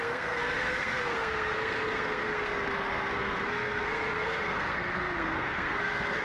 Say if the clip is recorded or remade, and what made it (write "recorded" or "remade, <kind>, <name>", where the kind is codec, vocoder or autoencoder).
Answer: remade, codec, SNAC